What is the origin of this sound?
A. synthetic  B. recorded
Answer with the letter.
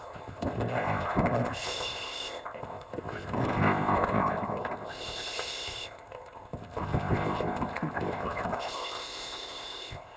A